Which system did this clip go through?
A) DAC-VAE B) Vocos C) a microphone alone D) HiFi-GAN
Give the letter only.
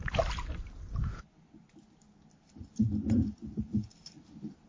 C